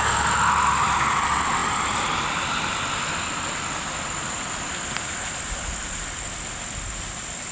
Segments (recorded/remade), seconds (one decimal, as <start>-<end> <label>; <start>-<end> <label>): 0.0-7.5 recorded